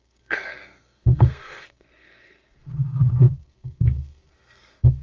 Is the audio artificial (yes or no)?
yes